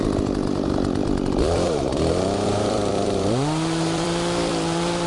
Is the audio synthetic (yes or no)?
yes